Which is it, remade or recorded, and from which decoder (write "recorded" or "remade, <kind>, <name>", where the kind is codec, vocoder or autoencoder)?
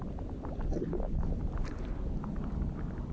recorded